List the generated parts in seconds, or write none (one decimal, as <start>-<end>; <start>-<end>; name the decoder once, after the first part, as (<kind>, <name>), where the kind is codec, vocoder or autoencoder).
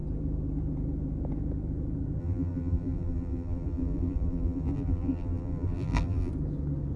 2.2-6.3 (vocoder, BigVGAN v2)